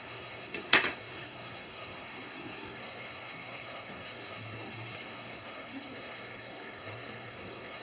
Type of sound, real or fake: fake